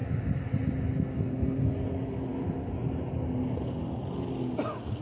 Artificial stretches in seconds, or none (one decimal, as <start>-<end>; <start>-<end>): none